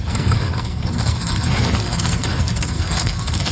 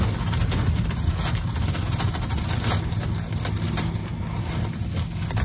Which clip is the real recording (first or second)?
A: second